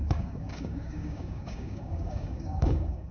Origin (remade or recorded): remade